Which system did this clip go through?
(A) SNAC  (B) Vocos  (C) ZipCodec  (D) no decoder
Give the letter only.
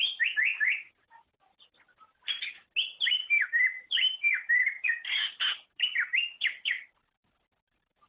D